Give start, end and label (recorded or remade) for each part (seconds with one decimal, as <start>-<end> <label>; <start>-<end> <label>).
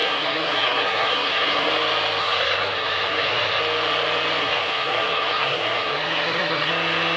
0.0-1.7 remade; 1.7-2.2 recorded; 2.2-3.6 remade; 3.6-4.4 recorded; 4.4-6.7 remade; 6.7-7.2 recorded